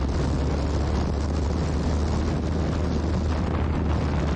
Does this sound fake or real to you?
real